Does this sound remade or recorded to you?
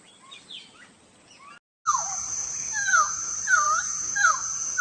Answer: recorded